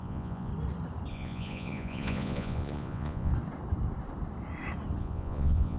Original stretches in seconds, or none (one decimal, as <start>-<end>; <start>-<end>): 0.5-1.1; 3.3-5.0